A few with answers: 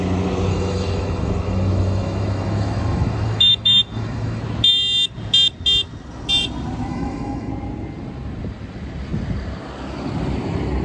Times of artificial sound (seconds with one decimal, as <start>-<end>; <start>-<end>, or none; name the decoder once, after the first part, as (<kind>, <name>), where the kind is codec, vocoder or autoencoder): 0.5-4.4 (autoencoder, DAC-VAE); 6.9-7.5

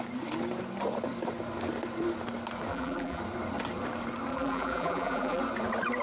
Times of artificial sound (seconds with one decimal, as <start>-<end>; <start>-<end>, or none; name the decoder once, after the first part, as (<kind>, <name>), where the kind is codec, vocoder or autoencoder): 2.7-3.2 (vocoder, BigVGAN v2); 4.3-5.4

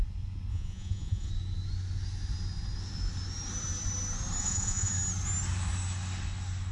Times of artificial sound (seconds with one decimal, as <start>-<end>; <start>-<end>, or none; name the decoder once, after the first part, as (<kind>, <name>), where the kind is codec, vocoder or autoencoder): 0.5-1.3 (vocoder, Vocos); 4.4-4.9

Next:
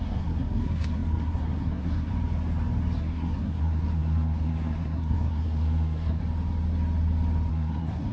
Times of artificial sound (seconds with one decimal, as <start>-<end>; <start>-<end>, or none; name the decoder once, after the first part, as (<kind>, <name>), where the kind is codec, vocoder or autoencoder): 0.0-2.1 (codec, SNAC); 3.0-6.2; 7.5-8.1

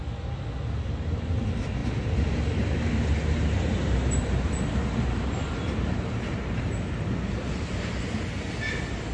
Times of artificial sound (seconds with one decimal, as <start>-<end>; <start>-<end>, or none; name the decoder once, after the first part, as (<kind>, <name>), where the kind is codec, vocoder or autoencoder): 1.8-6.4 (vocoder, BigVGAN v2)

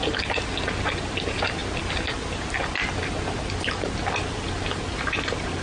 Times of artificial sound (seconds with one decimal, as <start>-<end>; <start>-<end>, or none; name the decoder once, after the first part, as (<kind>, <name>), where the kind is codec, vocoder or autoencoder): none

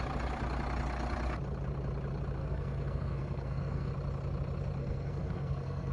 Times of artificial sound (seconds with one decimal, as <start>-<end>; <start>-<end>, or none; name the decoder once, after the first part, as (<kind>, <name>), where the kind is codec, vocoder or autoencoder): 2.4-3.9 (codec, SNAC); 4.8-5.9